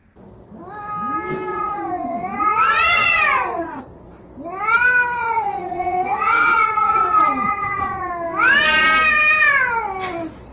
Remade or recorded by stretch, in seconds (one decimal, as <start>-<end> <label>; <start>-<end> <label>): 0.0-1.5 recorded; 1.5-3.8 remade; 3.8-5.2 recorded; 5.2-8.1 remade; 8.1-10.5 recorded